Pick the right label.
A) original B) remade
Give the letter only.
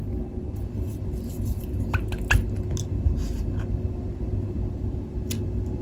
A